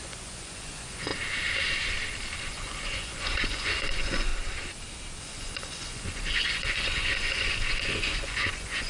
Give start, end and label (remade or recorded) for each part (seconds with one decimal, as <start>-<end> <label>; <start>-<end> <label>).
0.0-1.1 remade; 1.1-2.4 recorded; 2.4-4.3 remade; 4.3-5.2 recorded; 5.2-8.9 remade